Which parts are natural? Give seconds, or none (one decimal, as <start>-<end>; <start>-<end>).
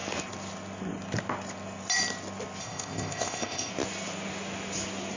0.0-2.6; 3.7-5.2